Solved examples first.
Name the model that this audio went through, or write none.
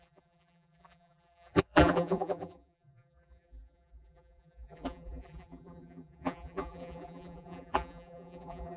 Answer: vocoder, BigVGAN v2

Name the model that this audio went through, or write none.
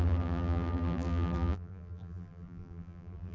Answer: vocoder, BigVGAN v2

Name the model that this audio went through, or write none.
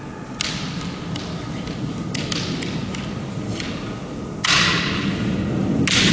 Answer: none